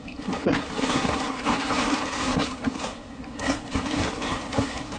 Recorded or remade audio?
remade